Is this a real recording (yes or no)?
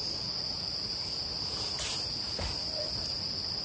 yes